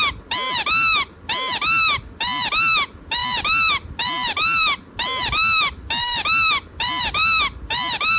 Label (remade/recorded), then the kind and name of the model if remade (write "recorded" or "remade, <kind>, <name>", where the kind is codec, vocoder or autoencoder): recorded